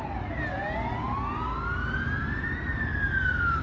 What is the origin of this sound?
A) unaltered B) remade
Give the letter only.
A